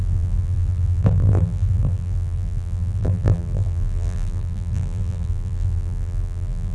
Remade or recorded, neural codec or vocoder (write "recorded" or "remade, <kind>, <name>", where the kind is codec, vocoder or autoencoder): remade, vocoder, BigVGAN v2